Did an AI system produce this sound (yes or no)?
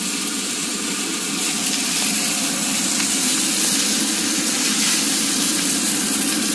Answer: no